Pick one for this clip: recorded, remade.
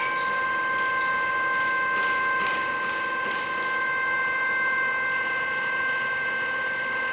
recorded